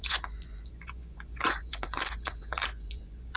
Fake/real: fake